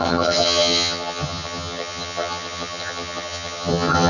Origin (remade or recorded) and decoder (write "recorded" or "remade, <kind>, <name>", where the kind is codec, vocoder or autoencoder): remade, vocoder, HiFi-GAN